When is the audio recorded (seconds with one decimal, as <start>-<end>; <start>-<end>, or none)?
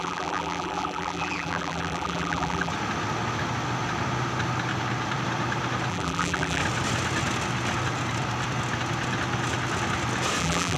2.7-5.9; 6.6-10.4